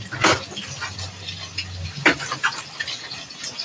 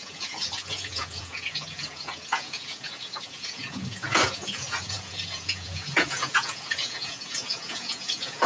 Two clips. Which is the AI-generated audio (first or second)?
second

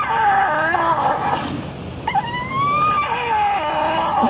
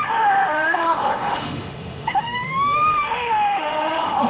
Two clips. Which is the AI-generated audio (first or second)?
second